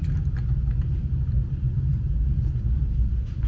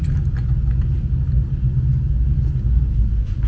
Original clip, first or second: second